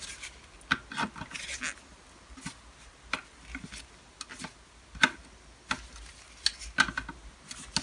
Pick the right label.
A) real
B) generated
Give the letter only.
A